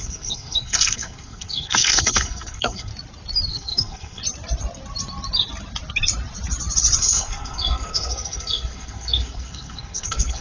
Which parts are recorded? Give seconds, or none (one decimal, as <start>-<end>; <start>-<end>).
2.9-3.5; 4.2-7.0